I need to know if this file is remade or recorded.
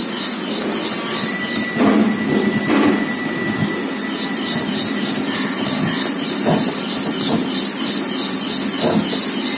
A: recorded